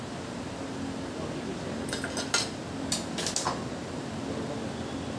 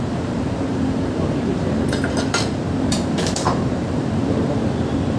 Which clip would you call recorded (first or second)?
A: first